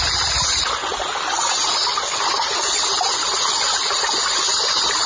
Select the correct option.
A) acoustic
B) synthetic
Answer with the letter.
A